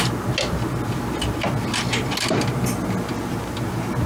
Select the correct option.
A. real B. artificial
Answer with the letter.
A